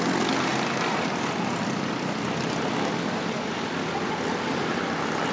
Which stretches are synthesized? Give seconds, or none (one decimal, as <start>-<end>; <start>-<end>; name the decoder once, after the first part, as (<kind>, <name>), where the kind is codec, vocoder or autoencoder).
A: none